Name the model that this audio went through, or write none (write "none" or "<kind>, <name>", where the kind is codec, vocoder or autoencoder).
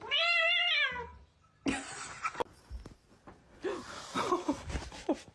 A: none